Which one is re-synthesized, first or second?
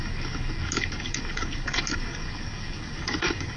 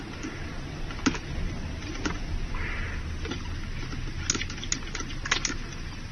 first